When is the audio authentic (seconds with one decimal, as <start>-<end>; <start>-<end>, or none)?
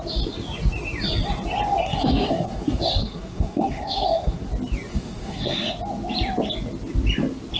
0.0-1.8; 4.5-4.9; 5.7-7.6